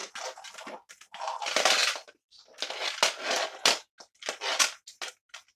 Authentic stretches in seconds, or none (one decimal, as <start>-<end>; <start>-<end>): 0.0-5.6